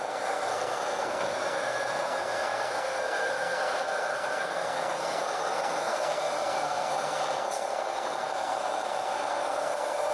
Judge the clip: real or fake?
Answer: fake